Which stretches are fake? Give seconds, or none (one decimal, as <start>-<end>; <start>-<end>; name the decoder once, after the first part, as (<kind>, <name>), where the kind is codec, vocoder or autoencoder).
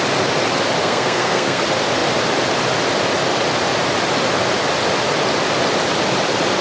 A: 0.8-1.6 (codec, SNAC)